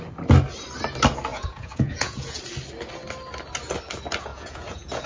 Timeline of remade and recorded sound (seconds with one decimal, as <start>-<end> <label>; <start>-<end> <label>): 0.0-1.3 recorded; 1.3-2.4 remade; 2.4-4.3 recorded; 4.3-5.1 remade